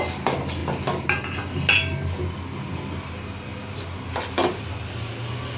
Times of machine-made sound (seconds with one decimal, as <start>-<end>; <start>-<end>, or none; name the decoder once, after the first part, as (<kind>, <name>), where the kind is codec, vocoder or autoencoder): none